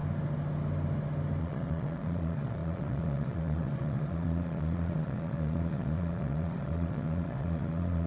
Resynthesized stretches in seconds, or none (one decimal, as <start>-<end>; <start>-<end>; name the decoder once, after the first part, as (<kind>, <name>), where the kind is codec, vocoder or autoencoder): 1.4-8.1 (vocoder, Vocos)